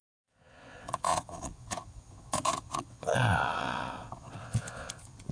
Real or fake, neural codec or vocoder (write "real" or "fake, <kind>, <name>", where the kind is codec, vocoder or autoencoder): fake, vocoder, Vocos